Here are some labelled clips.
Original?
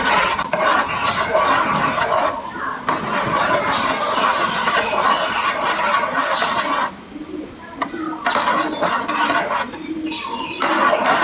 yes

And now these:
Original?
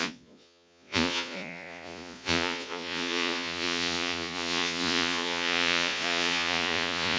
no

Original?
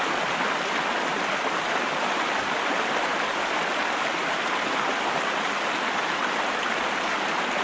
yes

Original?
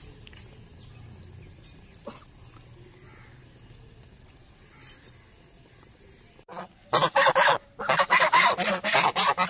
yes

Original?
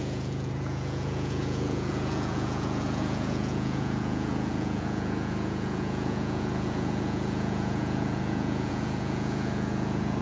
no